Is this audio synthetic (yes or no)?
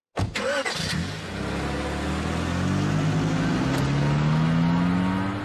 no